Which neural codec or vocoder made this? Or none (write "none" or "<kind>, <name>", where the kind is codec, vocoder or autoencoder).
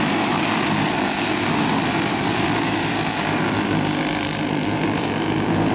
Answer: vocoder, BigVGAN v2